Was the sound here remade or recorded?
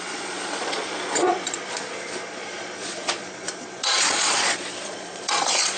remade